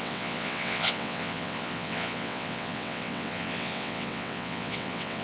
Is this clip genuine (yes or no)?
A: no